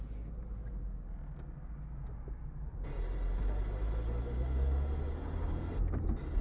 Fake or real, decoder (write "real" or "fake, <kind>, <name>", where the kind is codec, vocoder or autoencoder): real